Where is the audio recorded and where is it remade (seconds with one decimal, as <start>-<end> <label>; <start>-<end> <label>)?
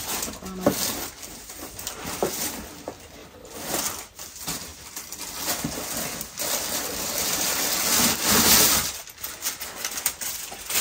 0.0-3.2 recorded; 3.2-3.8 remade; 3.8-10.8 recorded